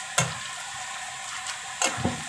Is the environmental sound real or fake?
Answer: real